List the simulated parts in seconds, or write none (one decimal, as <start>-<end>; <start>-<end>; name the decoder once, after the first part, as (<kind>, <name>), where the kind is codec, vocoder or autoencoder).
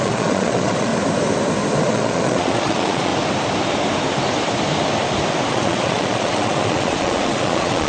0.0-0.9 (vocoder, Vocos); 1.8-3.1; 5.5-7.9